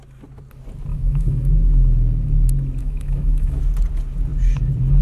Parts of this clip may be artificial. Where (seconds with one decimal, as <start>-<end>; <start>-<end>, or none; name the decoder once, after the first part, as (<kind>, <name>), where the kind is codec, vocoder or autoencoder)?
0.9-1.5 (autoencoder, DAC-VAE); 2.8-3.6